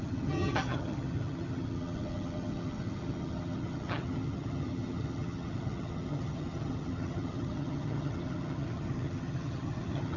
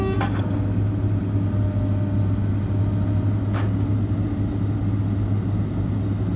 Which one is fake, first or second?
first